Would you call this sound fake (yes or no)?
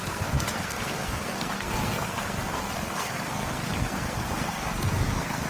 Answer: yes